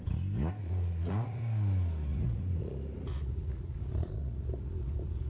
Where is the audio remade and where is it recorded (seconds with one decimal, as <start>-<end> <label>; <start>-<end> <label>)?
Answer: 0.0-0.6 recorded; 0.6-1.4 remade; 1.4-2.1 recorded; 2.1-5.3 remade